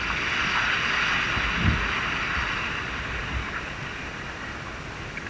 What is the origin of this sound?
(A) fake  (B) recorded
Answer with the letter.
B